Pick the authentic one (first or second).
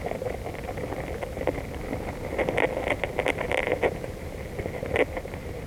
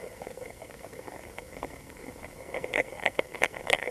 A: first